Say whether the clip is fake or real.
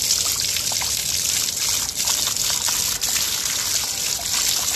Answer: real